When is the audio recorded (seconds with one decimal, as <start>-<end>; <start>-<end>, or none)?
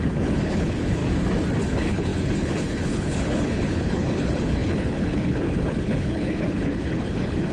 1.0-1.6